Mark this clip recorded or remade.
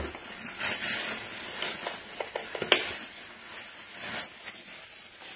recorded